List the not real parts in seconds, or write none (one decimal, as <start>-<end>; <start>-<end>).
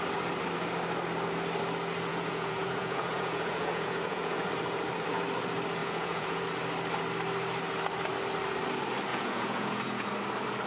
2.1-4.5; 5.8-6.4; 9.1-10.1